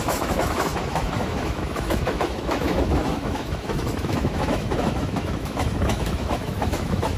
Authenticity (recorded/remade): remade